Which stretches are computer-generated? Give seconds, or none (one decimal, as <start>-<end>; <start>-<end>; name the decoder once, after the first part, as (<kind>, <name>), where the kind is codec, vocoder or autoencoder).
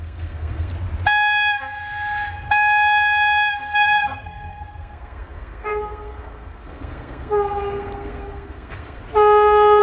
0.0-0.7 (codec, SNAC); 3.6-9.0